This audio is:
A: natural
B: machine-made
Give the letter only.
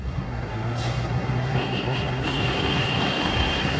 B